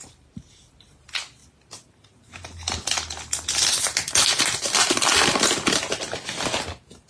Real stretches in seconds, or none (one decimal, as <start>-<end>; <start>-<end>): 0.0-7.1